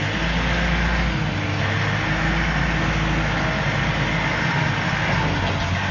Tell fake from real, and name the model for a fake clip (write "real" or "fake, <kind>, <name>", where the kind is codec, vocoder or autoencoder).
real